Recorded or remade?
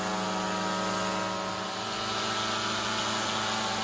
recorded